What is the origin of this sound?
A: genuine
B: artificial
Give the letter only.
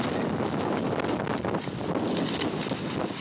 A